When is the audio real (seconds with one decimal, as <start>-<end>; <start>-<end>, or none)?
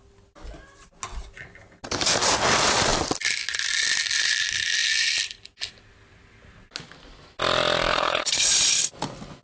0.0-7.9; 8.5-9.4